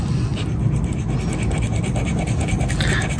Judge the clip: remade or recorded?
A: recorded